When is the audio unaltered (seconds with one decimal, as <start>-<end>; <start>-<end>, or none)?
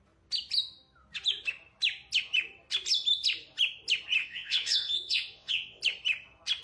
0.0-4.2; 5.8-6.6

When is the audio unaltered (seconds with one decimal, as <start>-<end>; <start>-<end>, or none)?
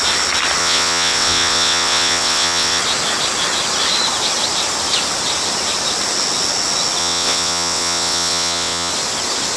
0.0-0.6; 2.8-7.0; 8.9-9.6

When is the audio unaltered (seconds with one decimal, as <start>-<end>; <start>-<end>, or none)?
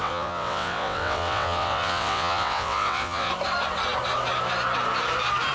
3.3-5.5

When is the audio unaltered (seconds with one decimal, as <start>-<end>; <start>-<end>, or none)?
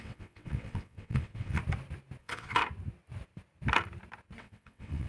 1.6-2.2; 2.6-4.4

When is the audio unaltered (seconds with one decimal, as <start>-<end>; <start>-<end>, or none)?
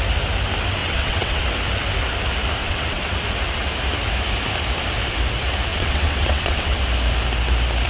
0.0-0.8; 1.4-2.6; 3.2-5.7; 6.8-7.9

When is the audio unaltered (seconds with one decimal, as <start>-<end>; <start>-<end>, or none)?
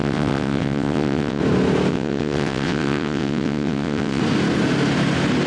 1.4-1.9; 4.2-5.5